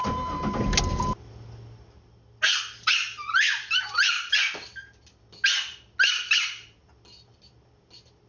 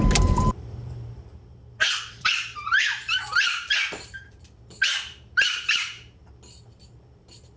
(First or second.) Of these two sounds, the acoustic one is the first